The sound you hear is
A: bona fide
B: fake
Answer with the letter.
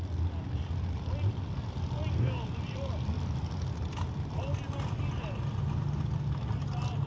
A